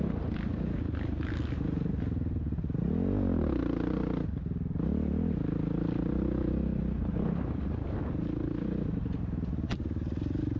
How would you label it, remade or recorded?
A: recorded